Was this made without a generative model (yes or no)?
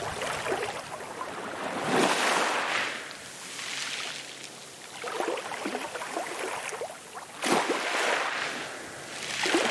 yes